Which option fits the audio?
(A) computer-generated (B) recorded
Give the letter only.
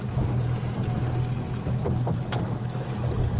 B